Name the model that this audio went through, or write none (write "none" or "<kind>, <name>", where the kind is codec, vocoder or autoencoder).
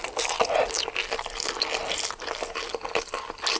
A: none